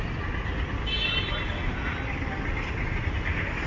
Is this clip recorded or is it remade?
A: recorded